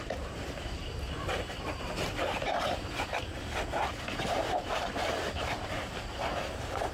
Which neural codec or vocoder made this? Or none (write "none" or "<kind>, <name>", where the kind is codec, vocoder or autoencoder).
vocoder, BigVGAN v2